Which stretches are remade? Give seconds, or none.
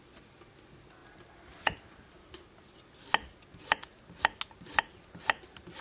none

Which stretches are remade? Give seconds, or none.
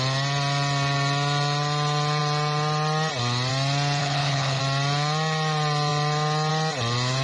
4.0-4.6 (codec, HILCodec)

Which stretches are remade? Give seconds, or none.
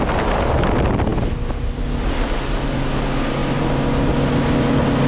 none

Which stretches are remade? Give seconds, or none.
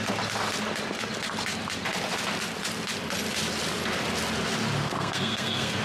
4.8-5.8 (codec, SNAC)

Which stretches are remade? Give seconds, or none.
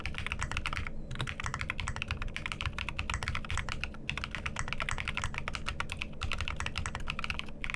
1.5-3.0 (vocoder, BigVGAN v2)